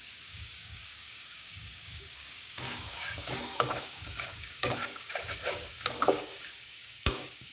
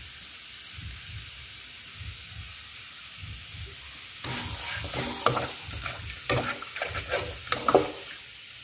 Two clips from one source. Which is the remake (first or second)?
first